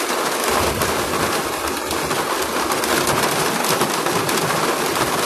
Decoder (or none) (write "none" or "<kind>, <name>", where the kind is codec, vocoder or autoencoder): none